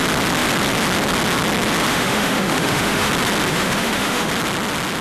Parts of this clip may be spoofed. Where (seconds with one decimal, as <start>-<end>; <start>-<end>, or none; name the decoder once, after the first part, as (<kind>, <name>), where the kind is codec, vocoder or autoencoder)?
1.9-3.1 (autoencoder, DAC-VAE); 3.5-4.3